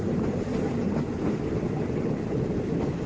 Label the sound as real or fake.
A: real